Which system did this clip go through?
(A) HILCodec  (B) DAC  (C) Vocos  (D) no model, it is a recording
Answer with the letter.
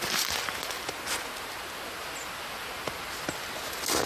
D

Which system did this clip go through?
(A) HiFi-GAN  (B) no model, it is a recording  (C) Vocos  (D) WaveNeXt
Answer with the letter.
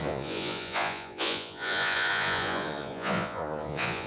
C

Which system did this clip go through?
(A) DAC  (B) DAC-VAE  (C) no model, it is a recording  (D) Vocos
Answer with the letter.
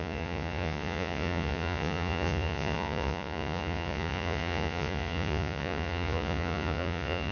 D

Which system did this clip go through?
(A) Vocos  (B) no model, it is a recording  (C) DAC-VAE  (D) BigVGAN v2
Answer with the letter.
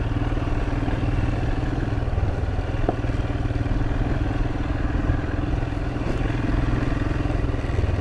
B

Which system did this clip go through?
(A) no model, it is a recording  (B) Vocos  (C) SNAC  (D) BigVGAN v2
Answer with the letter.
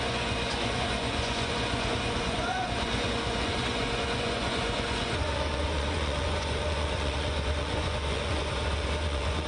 B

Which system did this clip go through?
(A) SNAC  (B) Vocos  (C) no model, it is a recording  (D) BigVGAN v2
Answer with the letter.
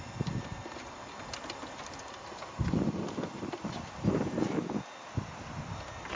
C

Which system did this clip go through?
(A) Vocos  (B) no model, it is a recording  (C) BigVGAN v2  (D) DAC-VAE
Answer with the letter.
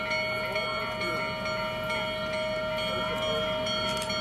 B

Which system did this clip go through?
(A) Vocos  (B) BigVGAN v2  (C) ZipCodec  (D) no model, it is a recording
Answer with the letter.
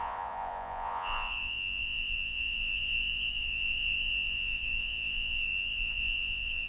A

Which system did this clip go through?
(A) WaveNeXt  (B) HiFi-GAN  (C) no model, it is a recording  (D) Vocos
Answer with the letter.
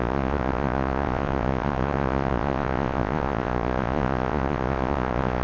D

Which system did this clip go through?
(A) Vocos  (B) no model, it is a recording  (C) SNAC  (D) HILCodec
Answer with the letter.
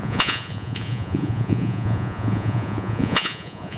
A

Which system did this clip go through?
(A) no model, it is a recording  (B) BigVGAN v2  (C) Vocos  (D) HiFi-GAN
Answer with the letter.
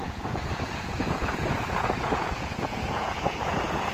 C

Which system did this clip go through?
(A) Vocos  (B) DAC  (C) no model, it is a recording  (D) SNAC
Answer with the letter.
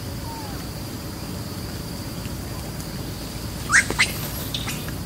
C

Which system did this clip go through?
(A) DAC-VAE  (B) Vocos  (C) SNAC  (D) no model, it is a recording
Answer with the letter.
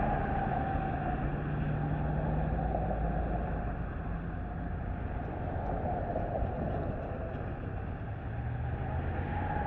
D